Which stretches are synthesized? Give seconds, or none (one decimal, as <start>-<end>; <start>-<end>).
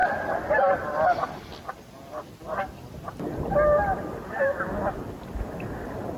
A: none